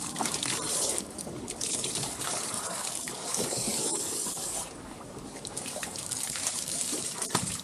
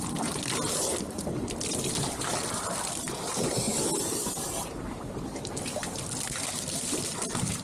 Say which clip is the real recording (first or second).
second